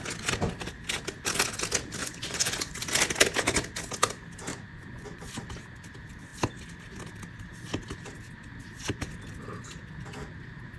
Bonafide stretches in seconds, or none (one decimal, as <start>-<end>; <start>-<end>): 0.0-2.0; 2.8-4.5; 5.4-10.8